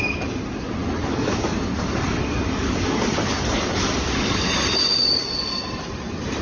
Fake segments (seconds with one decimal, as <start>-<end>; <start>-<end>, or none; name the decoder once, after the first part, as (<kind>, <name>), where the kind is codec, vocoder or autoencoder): 1.0-4.8 (codec, DAC)